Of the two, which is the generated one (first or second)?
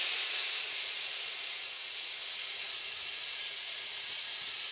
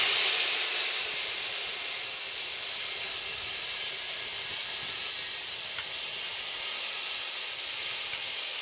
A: first